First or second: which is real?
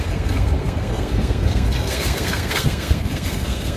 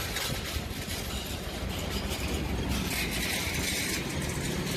second